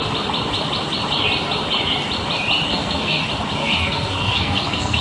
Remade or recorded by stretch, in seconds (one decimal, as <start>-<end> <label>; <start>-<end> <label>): 0.0-2.7 recorded; 2.7-3.2 remade; 3.2-3.6 recorded; 3.6-5.0 remade